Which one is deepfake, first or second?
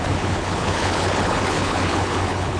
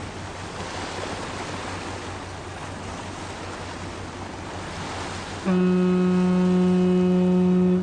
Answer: first